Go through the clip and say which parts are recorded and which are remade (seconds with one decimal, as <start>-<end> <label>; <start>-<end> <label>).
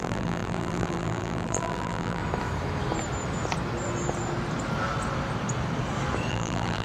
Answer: 0.0-2.2 remade; 2.2-6.3 recorded; 6.3-6.8 remade